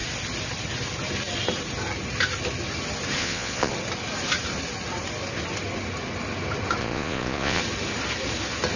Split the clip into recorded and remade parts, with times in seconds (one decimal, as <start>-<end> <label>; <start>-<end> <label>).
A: 0.0-3.2 recorded; 3.2-3.7 remade; 3.7-6.8 recorded; 6.8-7.6 remade; 7.6-8.8 recorded